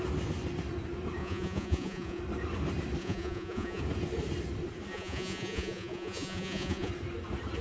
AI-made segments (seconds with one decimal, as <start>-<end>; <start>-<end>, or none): 1.2-2.2; 3.0-3.8; 4.9-6.9